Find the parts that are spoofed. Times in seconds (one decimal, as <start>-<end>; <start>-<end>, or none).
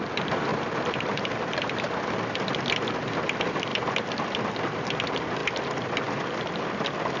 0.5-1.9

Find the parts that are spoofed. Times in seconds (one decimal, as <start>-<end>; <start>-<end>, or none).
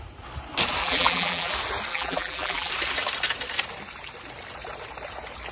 0.8-1.5; 1.9-2.7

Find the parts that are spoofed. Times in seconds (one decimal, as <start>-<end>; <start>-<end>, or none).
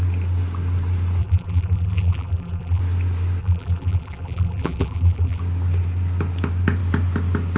1.2-2.8; 3.4-5.4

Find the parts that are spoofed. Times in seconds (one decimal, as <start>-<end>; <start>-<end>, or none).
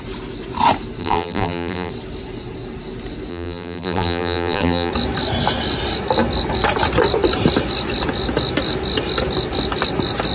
1.0-1.9; 3.3-4.9